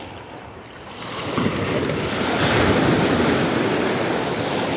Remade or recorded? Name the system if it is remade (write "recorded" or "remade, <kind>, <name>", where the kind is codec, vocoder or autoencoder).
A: recorded